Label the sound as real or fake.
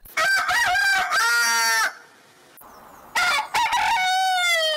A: real